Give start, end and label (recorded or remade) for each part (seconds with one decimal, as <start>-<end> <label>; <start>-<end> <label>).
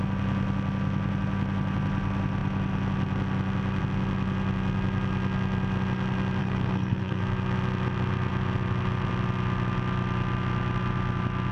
0.0-6.4 recorded; 6.4-7.2 remade; 7.2-11.5 recorded